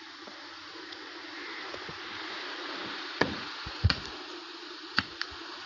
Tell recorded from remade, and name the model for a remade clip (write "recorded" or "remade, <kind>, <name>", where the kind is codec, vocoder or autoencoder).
remade, vocoder, Vocos